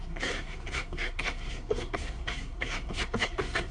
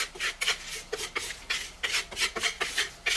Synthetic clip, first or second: first